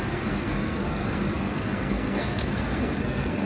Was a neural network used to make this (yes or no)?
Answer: yes